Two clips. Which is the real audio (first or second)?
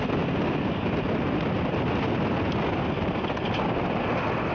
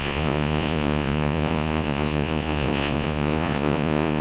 first